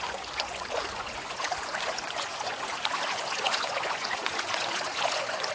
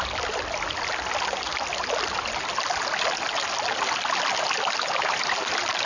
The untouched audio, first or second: second